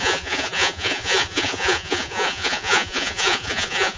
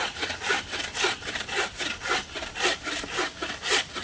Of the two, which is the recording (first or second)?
second